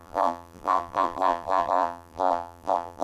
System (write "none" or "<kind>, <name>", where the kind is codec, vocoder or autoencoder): vocoder, BigVGAN v2